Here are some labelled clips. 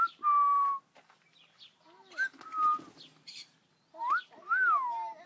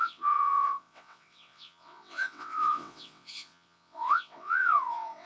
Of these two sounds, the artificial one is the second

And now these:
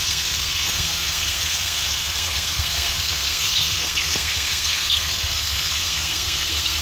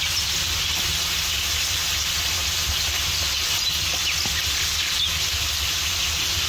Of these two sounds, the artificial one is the first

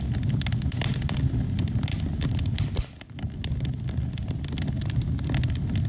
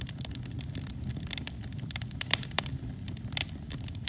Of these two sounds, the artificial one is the second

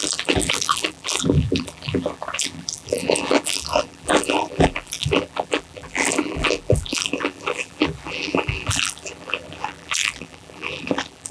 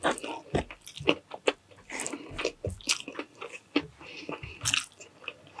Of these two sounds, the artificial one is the first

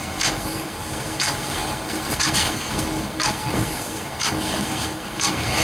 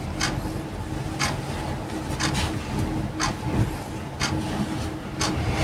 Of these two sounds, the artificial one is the first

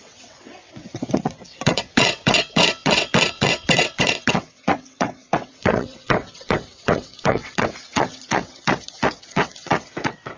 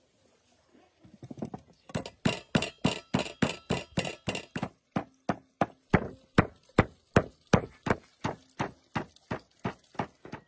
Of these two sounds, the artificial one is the first